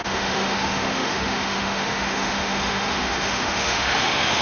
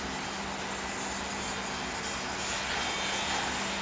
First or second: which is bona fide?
second